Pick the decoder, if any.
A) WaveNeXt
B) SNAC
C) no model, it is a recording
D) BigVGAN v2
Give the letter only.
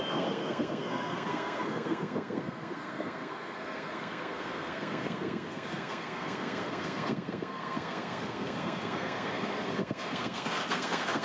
B